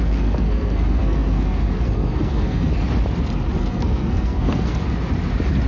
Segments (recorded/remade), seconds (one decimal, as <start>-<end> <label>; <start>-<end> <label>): 0.0-2.7 remade; 2.7-3.6 recorded; 3.6-4.8 remade; 4.8-5.7 recorded